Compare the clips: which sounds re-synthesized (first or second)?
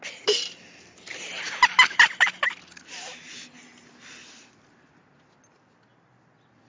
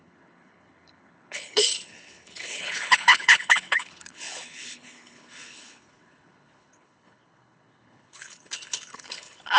second